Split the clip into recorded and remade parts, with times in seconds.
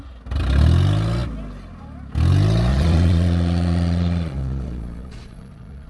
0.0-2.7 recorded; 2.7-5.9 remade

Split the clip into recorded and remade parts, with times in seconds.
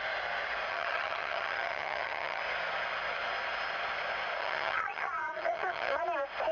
0.0-0.7 recorded; 0.7-2.4 remade; 2.4-4.4 recorded; 4.4-6.0 remade; 6.0-6.5 recorded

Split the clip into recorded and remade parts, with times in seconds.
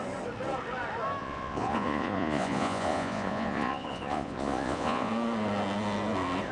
0.0-1.2 recorded; 1.2-5.1 remade; 5.1-6.5 recorded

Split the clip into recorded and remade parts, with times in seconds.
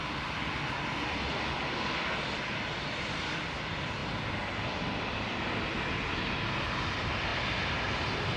0.0-8.4 recorded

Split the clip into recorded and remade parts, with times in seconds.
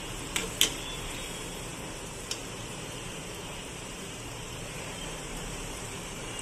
0.0-0.4 remade; 0.4-1.1 recorded; 1.1-6.4 remade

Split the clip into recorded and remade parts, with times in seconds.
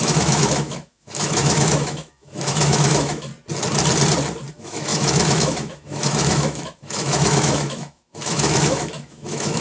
0.0-3.3 remade; 3.3-4.5 recorded; 4.5-9.6 remade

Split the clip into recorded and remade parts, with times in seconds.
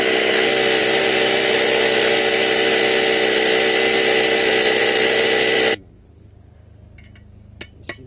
0.0-0.8 recorded; 0.8-1.5 remade; 1.5-8.1 recorded